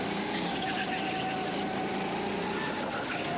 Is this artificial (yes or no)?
no